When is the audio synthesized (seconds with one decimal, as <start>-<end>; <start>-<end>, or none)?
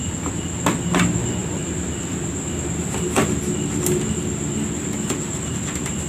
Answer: none